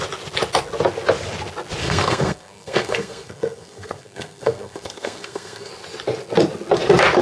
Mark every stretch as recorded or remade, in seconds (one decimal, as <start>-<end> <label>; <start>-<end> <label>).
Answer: 0.0-1.8 recorded; 1.8-5.7 remade; 5.7-7.2 recorded